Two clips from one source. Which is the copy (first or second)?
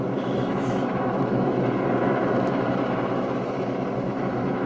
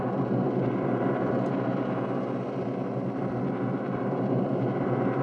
first